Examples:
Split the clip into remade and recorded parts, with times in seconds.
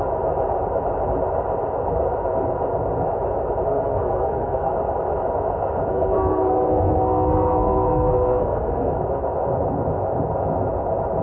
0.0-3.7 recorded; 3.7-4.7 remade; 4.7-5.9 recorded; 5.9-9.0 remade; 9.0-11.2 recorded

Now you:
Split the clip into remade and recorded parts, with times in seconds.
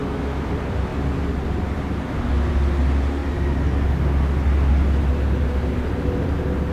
0.0-0.5 remade; 0.5-6.7 recorded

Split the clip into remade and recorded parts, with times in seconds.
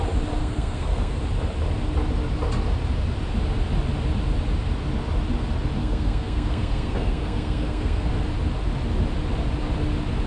0.0-0.4 recorded; 0.4-1.2 remade; 1.2-5.8 recorded; 5.8-8.1 remade; 8.1-10.3 recorded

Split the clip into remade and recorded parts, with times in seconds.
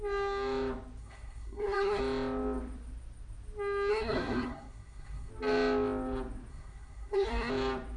0.0-1.0 recorded; 1.0-2.0 remade; 2.0-3.9 recorded; 3.9-5.3 remade; 5.3-6.5 recorded; 6.5-7.5 remade; 7.5-8.0 recorded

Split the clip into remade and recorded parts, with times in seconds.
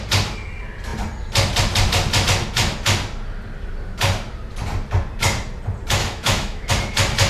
0.0-6.0 recorded; 6.0-6.7 remade; 6.7-7.3 recorded